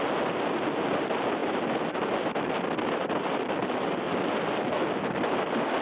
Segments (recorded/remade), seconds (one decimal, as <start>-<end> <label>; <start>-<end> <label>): 0.0-5.8 recorded